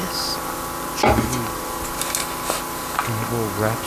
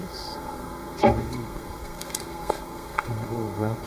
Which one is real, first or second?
first